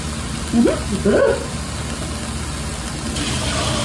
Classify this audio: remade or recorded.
recorded